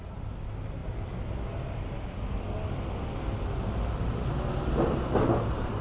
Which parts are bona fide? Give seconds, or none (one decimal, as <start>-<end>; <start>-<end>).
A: 0.0-5.8